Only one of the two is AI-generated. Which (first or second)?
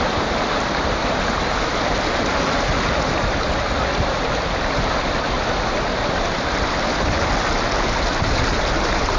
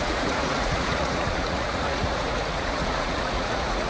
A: second